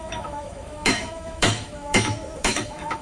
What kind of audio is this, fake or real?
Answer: fake